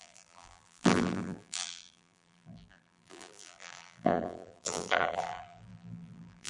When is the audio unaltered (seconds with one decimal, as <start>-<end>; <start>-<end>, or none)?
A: none